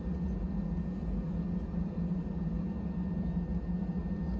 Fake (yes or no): no